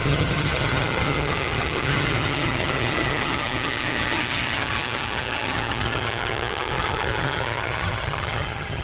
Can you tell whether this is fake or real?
fake